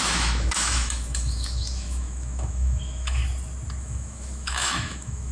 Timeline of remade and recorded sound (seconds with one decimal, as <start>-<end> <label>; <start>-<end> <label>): 0.0-3.2 remade; 3.2-3.8 recorded; 3.8-5.3 remade